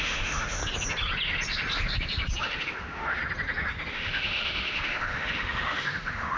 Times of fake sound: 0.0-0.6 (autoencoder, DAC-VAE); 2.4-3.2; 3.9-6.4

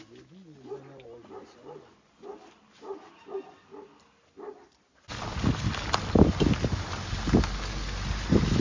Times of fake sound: none

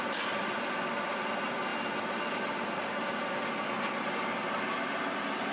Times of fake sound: none

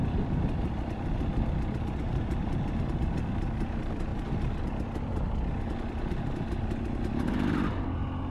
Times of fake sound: none

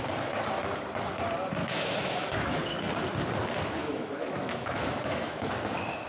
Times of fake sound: 1.6-2.6 (autoencoder, DAC-VAE); 3.8-5.5